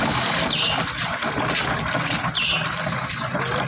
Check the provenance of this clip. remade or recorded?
recorded